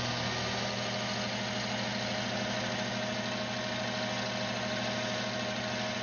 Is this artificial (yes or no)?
no